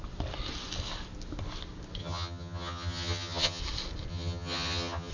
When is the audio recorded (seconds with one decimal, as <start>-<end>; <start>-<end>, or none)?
0.0-2.0; 3.6-4.1